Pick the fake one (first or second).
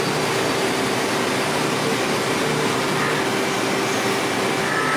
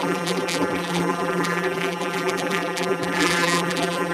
second